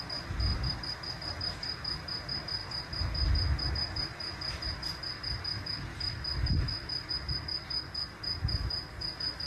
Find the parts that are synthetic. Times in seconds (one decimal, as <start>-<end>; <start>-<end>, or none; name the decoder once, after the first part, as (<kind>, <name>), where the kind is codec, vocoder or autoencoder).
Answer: 0.5-1.2 (vocoder, BigVGAN v2)